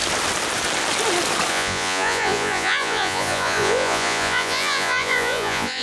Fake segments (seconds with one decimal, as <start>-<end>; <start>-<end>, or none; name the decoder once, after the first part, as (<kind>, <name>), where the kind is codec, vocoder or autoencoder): 1.5-5.8 (vocoder, Vocos)